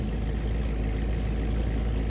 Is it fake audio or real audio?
real